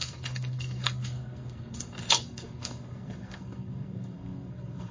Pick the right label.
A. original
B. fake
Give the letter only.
B